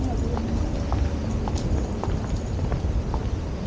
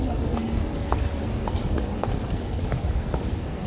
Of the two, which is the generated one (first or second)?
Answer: second